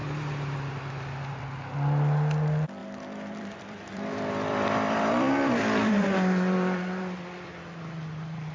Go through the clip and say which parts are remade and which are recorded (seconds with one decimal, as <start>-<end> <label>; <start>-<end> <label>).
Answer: 0.0-2.8 recorded; 2.8-7.5 remade; 7.5-8.5 recorded